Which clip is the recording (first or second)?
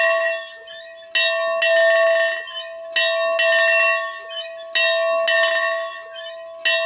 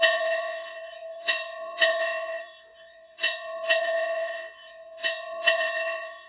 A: first